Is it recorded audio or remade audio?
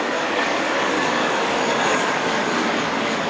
remade